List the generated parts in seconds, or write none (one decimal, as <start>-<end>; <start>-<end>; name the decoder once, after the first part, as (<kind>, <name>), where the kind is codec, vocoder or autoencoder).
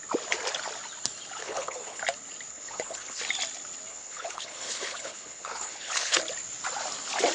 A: 1.4-2.0 (codec, HILCodec); 2.5-3.2; 3.9-6.2